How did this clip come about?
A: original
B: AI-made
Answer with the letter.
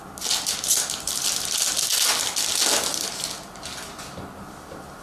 A